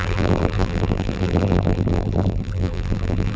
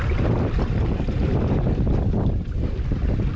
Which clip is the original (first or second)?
second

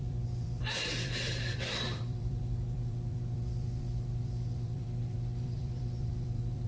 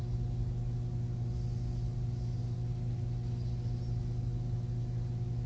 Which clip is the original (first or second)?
second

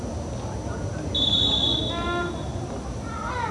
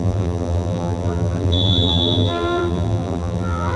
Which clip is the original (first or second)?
first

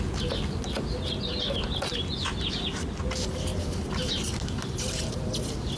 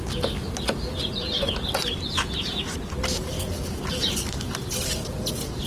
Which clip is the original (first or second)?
first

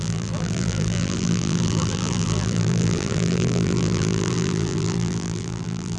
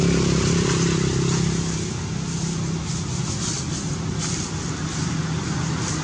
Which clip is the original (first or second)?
second